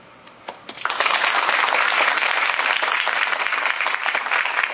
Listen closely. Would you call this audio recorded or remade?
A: remade